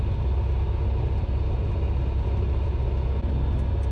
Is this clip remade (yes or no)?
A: no